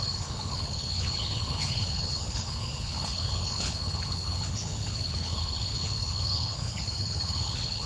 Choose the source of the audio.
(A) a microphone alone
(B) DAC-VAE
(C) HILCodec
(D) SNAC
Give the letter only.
C